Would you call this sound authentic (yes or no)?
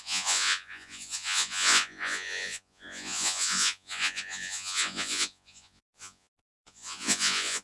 no